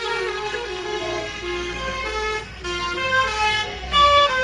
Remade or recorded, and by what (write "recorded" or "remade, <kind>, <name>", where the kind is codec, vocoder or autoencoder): remade, codec, SNAC